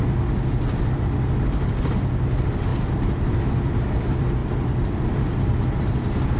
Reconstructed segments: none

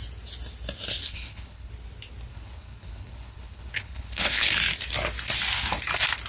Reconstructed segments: 1.0-1.7 (codec, HILCodec); 2.3-4.5

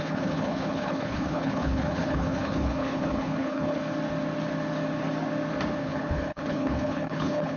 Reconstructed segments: 0.0-3.8 (codec, HILCodec); 5.8-7.6

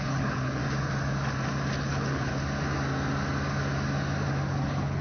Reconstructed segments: 0.0-0.6 (codec, HILCodec); 1.8-2.3; 4.5-5.0

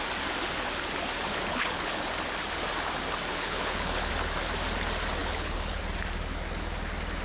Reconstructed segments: 1.5-2.0 (codec, HILCodec); 3.3-4.1; 5.2-5.8